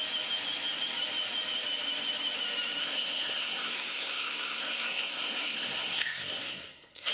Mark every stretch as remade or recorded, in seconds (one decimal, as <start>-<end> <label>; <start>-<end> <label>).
0.0-2.8 recorded; 2.8-7.1 remade